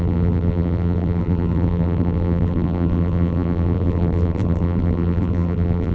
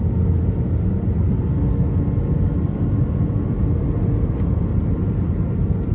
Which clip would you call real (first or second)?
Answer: second